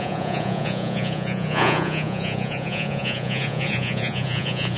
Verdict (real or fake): fake